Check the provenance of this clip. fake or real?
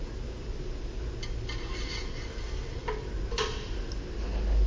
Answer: real